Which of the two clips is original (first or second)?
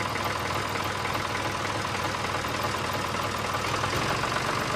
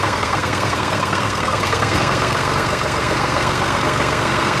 first